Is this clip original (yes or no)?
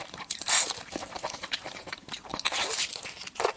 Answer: no